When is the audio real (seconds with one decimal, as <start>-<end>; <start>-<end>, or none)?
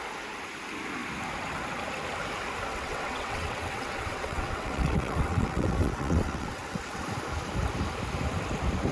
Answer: 0.0-2.7; 7.0-8.9